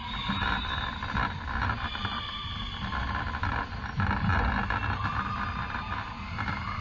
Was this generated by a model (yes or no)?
no